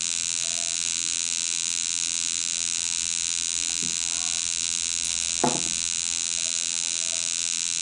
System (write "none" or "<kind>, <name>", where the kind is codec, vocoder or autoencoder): none